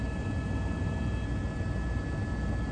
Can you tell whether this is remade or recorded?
recorded